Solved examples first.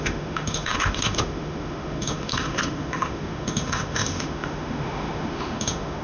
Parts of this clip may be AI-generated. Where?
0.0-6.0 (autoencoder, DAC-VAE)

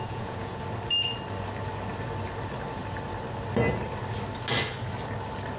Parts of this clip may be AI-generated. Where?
0.0-0.6 (vocoder, Vocos)

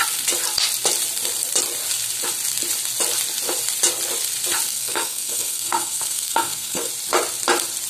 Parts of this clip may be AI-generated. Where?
4.7-6.9 (codec, SNAC)

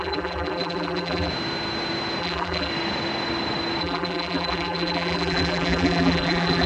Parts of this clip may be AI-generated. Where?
0.0-1.3 (vocoder, BigVGAN v2); 2.2-2.7; 3.8-6.7

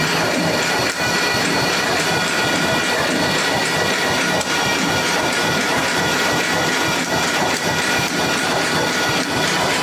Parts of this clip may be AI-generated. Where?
0.0-9.8 (vocoder, BigVGAN v2)

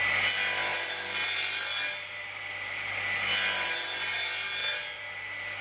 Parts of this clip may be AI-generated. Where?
none

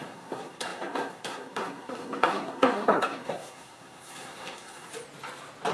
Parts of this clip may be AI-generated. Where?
0.0-4.9 (codec, SNAC)